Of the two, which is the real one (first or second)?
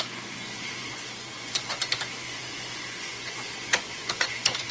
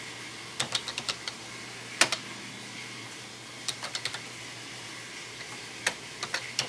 second